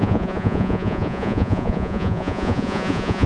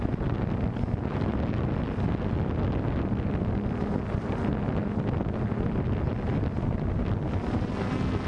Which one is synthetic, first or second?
first